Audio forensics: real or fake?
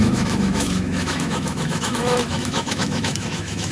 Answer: fake